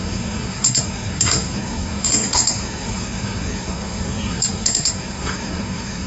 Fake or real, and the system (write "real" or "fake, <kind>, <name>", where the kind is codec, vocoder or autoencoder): fake, codec, SNAC